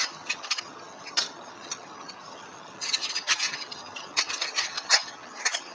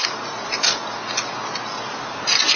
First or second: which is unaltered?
second